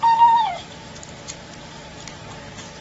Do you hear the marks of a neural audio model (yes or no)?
yes